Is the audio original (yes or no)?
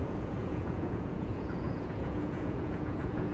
no